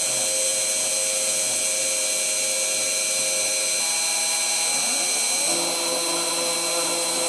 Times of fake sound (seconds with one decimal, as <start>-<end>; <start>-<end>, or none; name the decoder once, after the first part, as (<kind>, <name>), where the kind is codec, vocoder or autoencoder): none